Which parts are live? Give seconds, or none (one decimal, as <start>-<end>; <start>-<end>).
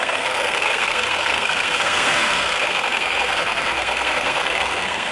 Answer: none